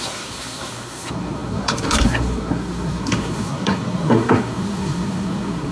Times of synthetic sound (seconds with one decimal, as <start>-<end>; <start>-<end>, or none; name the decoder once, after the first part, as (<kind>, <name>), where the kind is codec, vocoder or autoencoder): 0.0-5.7 (codec, SNAC)